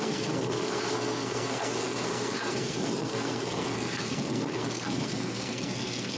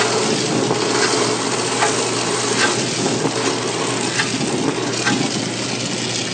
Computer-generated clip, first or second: first